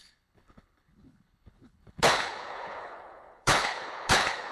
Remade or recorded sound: remade